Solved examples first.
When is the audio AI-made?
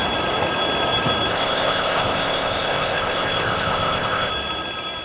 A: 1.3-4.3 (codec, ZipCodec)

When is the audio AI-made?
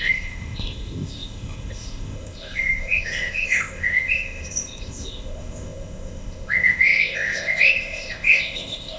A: 0.0-9.0 (codec, ZipCodec)